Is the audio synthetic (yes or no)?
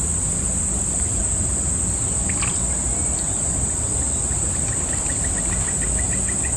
no